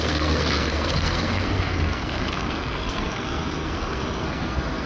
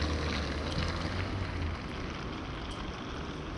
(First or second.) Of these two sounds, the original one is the second